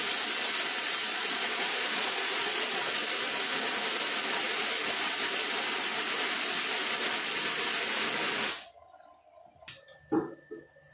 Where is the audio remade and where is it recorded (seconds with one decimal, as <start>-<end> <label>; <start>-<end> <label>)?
0.0-1.1 recorded; 1.1-3.0 remade; 3.0-10.9 recorded